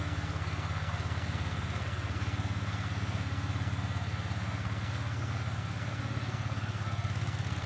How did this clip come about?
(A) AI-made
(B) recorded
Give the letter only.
A